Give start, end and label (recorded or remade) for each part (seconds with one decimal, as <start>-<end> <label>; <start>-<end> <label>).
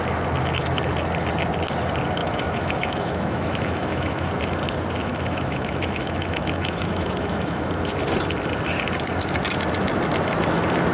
0.0-2.2 recorded; 2.2-4.3 remade; 4.3-5.0 recorded; 5.0-7.7 remade; 7.7-10.9 recorded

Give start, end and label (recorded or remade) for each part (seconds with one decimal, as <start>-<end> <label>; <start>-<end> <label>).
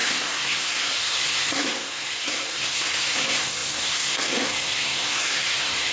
0.0-5.9 remade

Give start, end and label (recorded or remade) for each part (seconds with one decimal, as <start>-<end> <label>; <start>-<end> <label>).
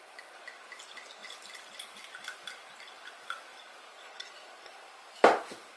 0.0-3.9 recorded; 3.9-4.7 remade; 4.7-5.8 recorded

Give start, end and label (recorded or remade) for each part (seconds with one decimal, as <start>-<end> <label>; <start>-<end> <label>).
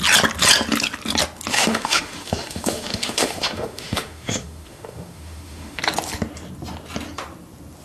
0.0-1.5 recorded; 1.5-5.8 remade; 5.8-7.8 recorded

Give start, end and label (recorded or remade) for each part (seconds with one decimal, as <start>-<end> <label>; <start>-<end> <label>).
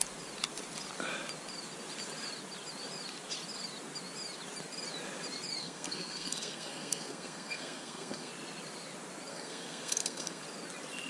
0.0-5.6 recorded; 5.6-8.3 remade; 8.3-9.3 recorded; 9.3-10.4 remade; 10.4-11.1 recorded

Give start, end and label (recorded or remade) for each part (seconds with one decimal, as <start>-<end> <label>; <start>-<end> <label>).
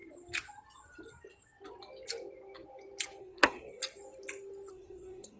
0.0-3.2 recorded; 3.2-3.8 remade; 3.8-4.7 recorded; 4.7-5.4 remade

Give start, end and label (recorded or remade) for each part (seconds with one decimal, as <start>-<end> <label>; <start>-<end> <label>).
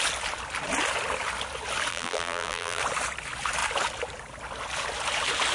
0.0-1.9 recorded; 1.9-2.8 remade; 2.8-5.5 recorded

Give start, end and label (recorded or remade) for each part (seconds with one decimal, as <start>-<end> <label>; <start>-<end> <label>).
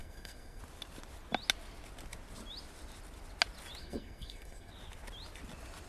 0.0-0.6 remade; 0.6-3.8 recorded; 3.8-4.7 remade; 4.7-5.9 recorded